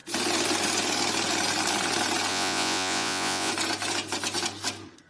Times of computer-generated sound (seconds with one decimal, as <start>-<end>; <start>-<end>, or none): 2.3-3.5